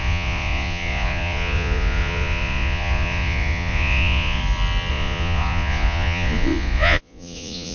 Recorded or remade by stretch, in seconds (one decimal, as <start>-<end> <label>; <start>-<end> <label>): 0.0-4.4 remade; 4.4-4.9 recorded; 4.9-7.7 remade

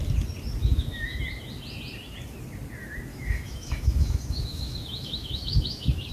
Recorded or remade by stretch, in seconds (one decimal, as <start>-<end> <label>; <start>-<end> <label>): 0.0-0.6 recorded; 0.6-1.2 remade; 1.2-3.1 recorded; 3.1-6.1 remade

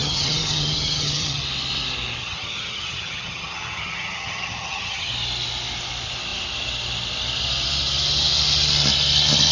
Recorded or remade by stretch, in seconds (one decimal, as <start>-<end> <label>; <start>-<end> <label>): 0.0-1.4 remade; 1.4-2.2 recorded; 2.2-5.1 remade; 5.1-9.5 recorded

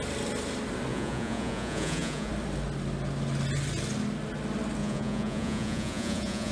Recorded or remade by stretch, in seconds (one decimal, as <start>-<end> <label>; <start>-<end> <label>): 0.0-0.9 recorded; 0.9-2.3 remade; 2.3-4.8 recorded; 4.8-6.5 remade

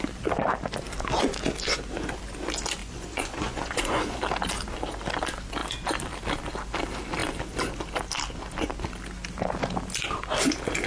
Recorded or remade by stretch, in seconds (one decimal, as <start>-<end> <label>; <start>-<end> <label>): 0.0-2.8 recorded; 2.8-4.2 remade; 4.2-10.9 recorded

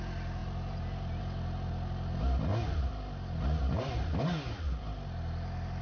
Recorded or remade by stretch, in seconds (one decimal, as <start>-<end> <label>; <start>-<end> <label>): 0.0-5.8 recorded

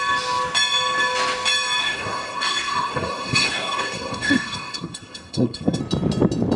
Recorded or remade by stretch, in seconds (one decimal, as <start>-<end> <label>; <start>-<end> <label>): 0.0-1.8 recorded; 1.8-5.8 remade; 5.8-6.6 recorded